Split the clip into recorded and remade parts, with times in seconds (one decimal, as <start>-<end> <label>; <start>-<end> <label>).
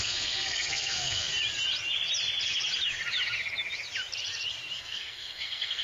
0.0-1.3 remade; 1.3-4.8 recorded; 4.8-5.8 remade